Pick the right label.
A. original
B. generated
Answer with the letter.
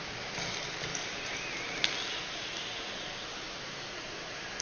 A